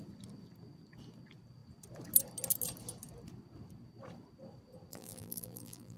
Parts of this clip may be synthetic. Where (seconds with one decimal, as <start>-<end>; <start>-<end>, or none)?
4.9-6.0